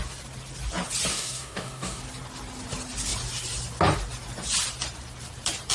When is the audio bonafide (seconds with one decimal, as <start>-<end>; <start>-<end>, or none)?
0.0-1.1; 2.0-5.7

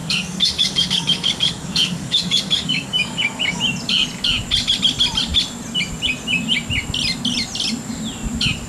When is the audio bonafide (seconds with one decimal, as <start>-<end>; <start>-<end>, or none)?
3.6-8.7

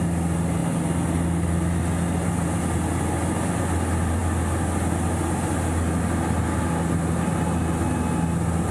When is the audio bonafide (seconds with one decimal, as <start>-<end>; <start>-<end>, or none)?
0.0-8.7

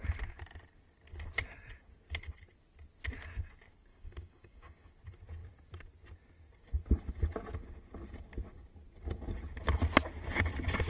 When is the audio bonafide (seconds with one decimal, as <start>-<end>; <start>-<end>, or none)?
0.0-3.9; 4.9-10.9

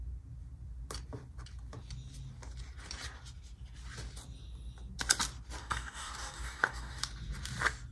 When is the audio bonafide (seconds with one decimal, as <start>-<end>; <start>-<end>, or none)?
0.0-5.6; 7.0-7.9